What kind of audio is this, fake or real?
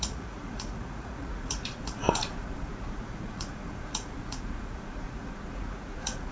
fake